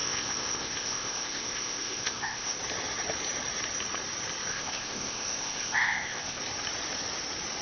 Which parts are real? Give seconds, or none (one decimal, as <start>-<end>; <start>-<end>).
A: 2.6-4.5; 6.4-7.6